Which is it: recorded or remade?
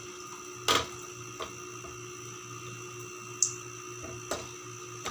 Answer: recorded